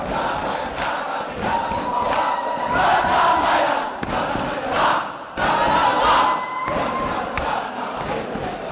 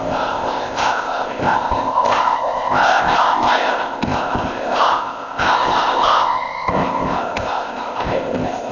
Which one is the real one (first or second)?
first